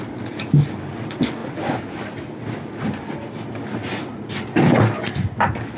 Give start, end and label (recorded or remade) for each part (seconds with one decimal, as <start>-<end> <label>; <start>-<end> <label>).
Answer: 0.0-5.8 recorded